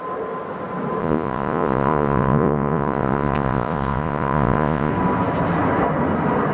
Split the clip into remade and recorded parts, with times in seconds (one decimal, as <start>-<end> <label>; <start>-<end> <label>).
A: 0.0-1.0 recorded; 1.0-4.9 remade; 4.9-6.5 recorded